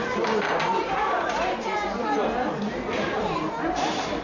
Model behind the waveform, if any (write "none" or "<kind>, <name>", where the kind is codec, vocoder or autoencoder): none